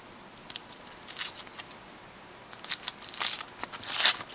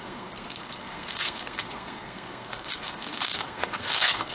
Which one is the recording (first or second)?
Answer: first